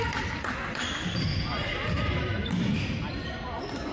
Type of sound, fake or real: real